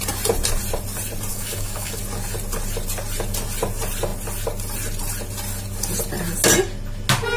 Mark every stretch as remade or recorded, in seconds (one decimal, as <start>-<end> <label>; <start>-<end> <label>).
0.0-1.3 recorded; 1.3-2.0 remade; 2.0-7.4 recorded